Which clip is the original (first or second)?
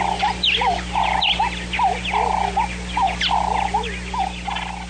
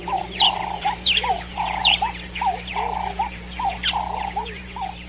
first